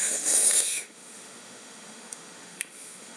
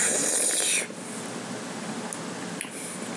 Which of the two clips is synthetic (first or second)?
first